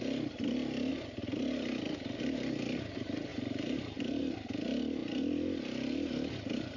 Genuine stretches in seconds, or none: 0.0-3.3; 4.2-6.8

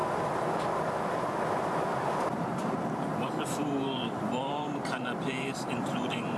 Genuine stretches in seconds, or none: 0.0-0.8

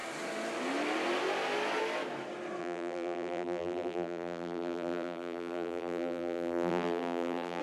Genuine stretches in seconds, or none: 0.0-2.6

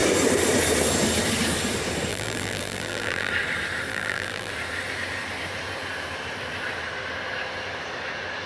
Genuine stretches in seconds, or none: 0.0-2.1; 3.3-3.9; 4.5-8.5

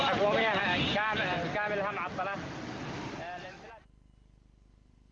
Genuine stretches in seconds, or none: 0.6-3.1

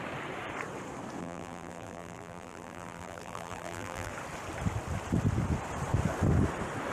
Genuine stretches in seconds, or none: 0.0-1.2; 4.1-6.9

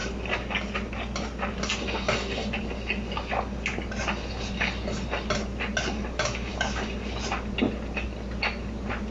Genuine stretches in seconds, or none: 0.0-6.5

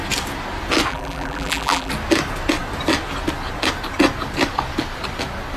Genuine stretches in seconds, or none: 0.0-0.9; 1.9-5.6